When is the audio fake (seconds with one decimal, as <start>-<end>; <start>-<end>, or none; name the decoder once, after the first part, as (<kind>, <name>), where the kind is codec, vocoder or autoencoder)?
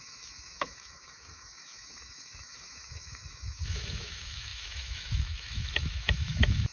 0.0-6.7 (autoencoder, DAC-VAE)